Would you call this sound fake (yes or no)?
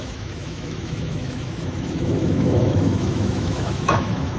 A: yes